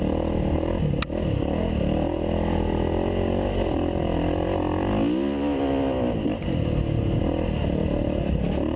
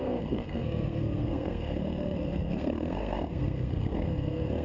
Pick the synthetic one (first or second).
second